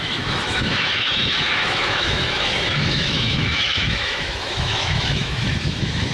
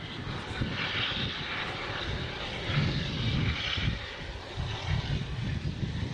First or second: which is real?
second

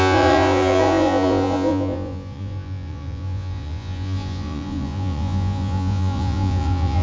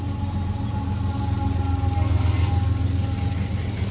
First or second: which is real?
second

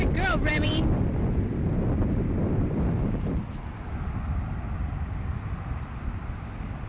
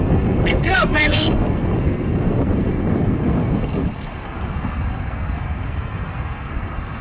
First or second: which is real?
first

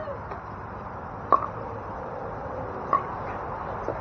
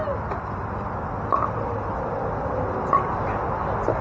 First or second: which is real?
second